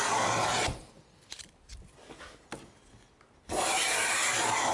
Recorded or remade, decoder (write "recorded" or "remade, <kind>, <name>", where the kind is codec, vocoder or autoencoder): recorded